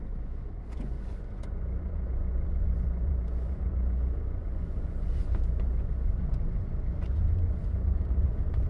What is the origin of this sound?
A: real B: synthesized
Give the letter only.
B